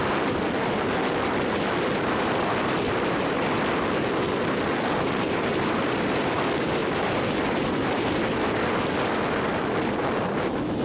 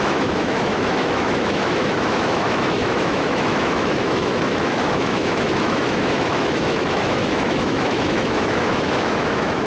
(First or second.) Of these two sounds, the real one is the first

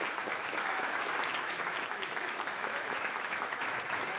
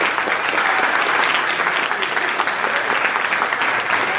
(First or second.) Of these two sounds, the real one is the second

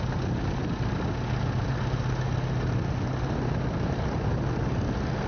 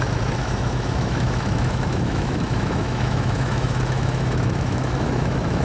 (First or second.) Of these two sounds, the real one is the first